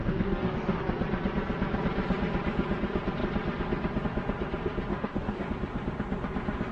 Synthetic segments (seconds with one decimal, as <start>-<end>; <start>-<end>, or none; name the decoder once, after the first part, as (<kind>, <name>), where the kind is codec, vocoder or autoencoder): 0.0-0.8 (codec, DAC); 4.9-5.5